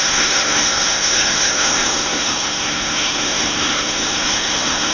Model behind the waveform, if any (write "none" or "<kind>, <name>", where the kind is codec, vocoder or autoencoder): codec, SNAC